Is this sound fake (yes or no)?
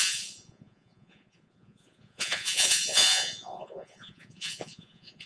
yes